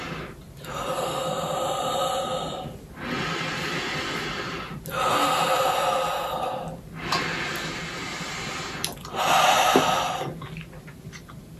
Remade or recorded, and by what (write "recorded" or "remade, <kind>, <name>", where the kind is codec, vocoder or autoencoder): recorded